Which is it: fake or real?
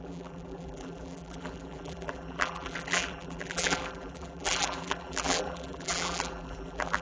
fake